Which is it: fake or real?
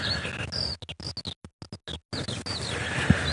real